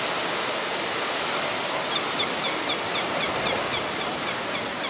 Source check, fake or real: real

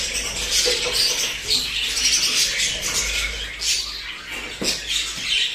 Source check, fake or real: real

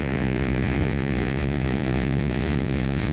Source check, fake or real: fake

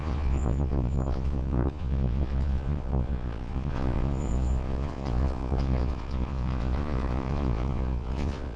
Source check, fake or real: fake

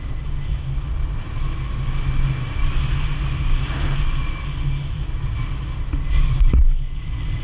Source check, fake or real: real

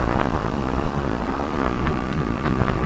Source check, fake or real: fake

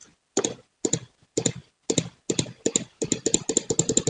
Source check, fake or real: real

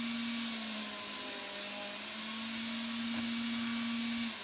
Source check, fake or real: real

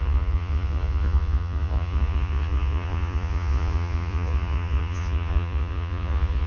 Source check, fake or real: fake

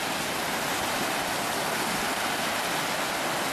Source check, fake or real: real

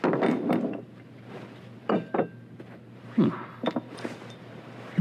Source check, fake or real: real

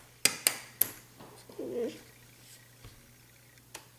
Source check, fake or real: real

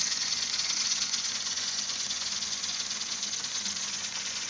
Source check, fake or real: fake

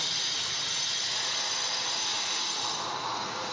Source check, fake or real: fake